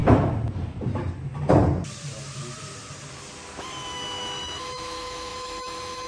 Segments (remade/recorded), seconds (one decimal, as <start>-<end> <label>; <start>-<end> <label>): 0.0-3.7 recorded; 3.7-6.1 remade